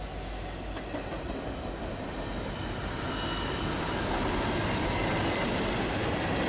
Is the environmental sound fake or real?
real